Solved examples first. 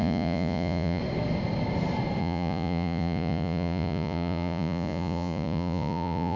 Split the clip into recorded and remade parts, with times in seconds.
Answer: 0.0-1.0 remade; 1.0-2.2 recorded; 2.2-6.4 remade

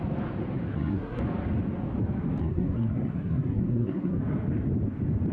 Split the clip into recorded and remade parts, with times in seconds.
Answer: 0.0-0.7 recorded; 0.7-1.2 remade; 1.2-2.4 recorded; 2.4-4.2 remade; 4.2-5.3 recorded

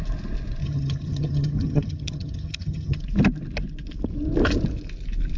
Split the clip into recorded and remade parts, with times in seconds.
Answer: 0.0-0.6 recorded; 0.6-3.0 remade; 3.0-5.4 recorded

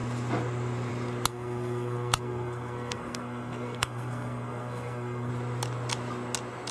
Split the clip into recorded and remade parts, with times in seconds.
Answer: 0.0-1.3 recorded; 1.3-5.3 remade; 5.3-6.7 recorded